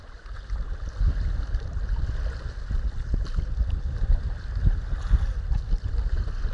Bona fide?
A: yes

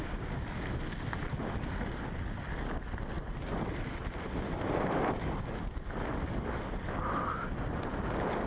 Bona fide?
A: yes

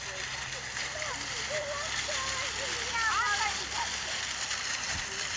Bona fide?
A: yes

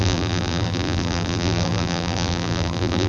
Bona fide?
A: no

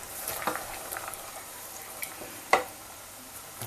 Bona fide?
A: no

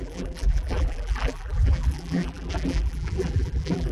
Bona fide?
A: no